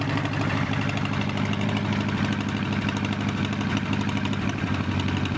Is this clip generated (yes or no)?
no